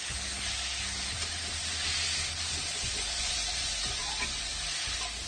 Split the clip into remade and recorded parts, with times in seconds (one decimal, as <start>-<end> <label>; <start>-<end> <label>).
0.0-2.7 recorded; 2.7-4.5 remade; 4.5-5.3 recorded